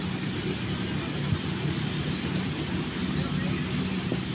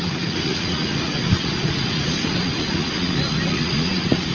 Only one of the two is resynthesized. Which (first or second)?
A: second